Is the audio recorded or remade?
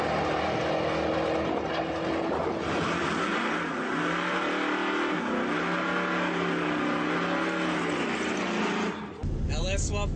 recorded